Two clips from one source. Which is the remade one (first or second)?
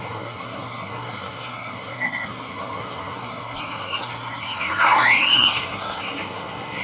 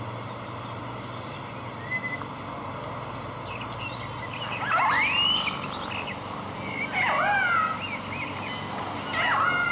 first